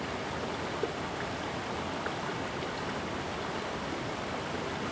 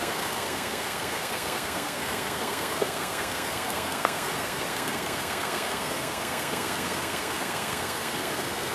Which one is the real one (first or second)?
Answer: first